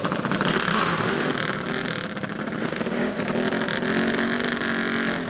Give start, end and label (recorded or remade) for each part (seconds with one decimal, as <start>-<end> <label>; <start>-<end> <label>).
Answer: 0.0-0.5 recorded; 0.5-1.3 remade; 1.3-2.6 recorded; 2.6-3.2 remade; 3.2-5.3 recorded

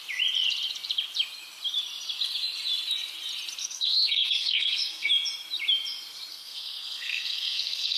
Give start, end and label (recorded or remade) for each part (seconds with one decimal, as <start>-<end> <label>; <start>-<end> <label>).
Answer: 0.0-3.6 recorded; 3.6-5.1 remade; 5.1-6.3 recorded; 6.3-8.0 remade

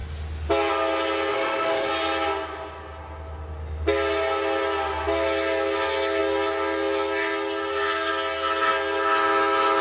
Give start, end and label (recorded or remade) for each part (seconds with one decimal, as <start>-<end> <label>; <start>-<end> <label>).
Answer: 0.0-1.3 recorded; 1.3-1.9 remade; 1.9-9.8 recorded

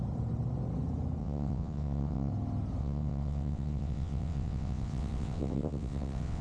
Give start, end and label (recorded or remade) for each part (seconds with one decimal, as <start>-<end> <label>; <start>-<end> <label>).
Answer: 0.0-1.2 recorded; 1.2-2.3 remade; 2.3-2.8 recorded; 2.8-6.4 remade

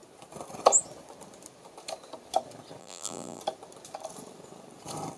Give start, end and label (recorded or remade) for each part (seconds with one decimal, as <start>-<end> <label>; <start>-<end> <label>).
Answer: 0.0-2.8 recorded; 2.8-3.4 remade; 3.4-5.2 recorded

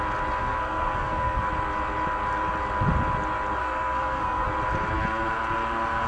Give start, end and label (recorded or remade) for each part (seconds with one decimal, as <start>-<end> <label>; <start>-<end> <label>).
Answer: 0.0-0.4 recorded; 0.4-1.5 remade; 1.5-3.6 recorded; 3.6-4.5 remade; 4.5-6.1 recorded